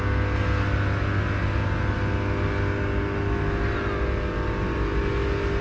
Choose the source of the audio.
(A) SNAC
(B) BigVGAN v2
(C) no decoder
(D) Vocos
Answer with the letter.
C